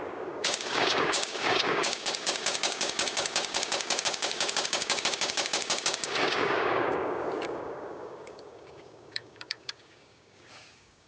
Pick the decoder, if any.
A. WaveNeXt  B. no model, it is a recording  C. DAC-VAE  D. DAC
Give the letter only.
D